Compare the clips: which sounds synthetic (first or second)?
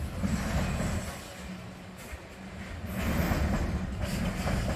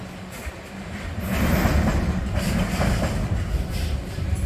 second